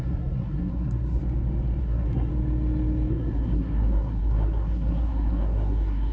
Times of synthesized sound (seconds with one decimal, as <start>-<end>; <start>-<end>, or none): 0.0-1.2; 1.8-2.3; 3.1-6.1